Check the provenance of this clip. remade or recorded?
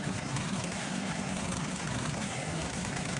remade